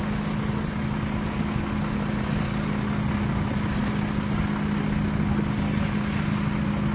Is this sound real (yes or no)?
yes